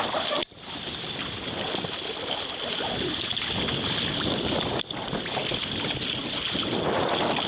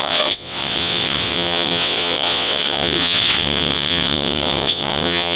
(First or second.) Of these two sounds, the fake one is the second